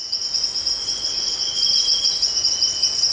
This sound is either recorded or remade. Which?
recorded